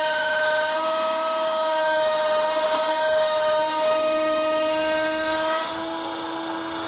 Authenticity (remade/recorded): remade